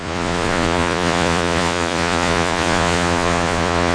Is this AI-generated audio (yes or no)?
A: yes